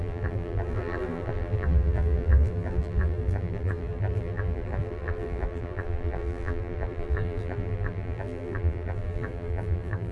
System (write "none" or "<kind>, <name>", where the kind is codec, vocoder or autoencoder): vocoder, BigVGAN v2